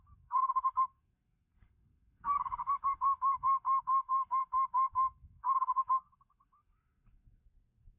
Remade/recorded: remade